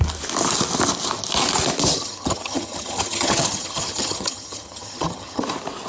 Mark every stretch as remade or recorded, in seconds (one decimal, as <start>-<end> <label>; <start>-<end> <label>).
0.0-1.9 recorded; 1.9-5.4 remade; 5.4-5.9 recorded